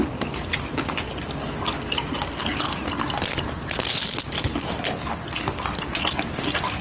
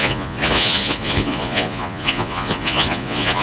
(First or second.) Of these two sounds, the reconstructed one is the second